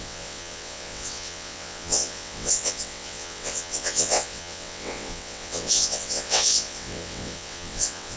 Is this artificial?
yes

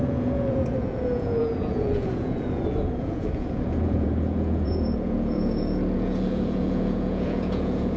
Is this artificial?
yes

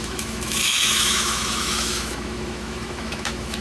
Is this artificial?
yes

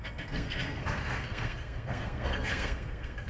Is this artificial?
yes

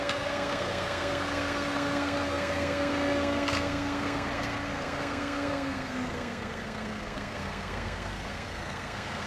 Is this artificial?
yes